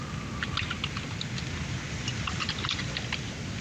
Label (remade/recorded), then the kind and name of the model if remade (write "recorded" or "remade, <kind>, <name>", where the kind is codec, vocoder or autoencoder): recorded